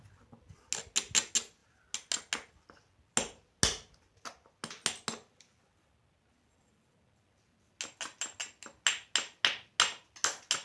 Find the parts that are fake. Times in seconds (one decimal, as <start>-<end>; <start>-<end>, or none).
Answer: none